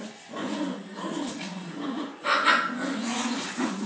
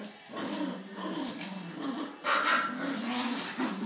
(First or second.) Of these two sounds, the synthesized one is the first